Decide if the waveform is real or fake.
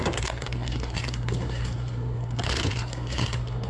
fake